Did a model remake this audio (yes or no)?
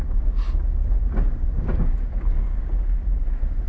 no